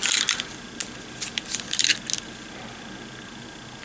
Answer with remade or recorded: recorded